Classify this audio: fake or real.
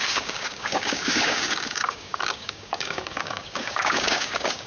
fake